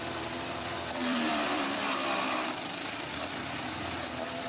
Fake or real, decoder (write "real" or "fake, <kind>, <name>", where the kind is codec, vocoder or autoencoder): fake, vocoder, BigVGAN v2